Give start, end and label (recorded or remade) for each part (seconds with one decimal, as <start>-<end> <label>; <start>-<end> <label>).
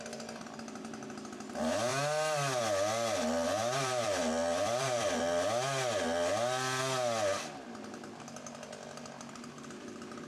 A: 0.0-3.6 recorded; 3.6-5.2 remade; 5.2-10.3 recorded